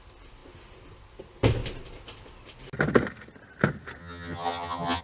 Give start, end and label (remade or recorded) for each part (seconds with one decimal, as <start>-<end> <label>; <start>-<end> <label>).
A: 0.0-4.0 recorded; 4.0-5.0 remade